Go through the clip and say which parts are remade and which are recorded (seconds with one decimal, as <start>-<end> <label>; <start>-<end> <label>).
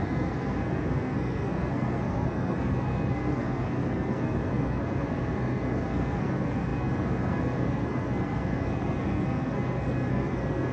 0.0-10.7 remade